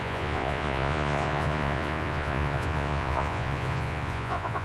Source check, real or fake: fake